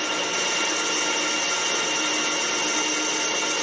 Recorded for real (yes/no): yes